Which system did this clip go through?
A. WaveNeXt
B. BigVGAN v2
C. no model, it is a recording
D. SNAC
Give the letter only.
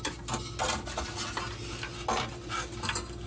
C